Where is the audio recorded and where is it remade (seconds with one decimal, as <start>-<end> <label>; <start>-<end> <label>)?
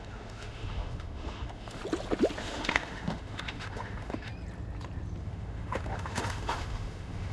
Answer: 0.0-1.8 remade; 1.8-2.4 recorded; 2.4-4.3 remade; 4.3-5.2 recorded; 5.2-7.3 remade